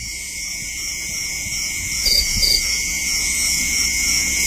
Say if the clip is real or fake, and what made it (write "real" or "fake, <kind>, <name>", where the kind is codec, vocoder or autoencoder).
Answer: fake, vocoder, Vocos